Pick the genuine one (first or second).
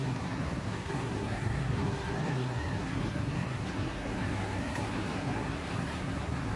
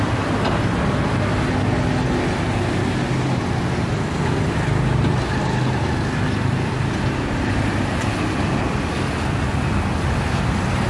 second